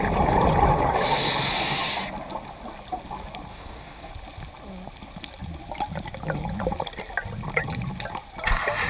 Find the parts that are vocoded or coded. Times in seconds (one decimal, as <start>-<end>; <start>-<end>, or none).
3.5-4.1